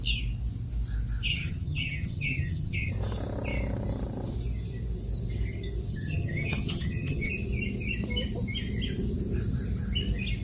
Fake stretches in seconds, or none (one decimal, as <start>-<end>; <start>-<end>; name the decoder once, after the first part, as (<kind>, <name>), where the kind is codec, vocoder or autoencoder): 1.3-2.9 (vocoder, HiFi-GAN); 5.9-7.3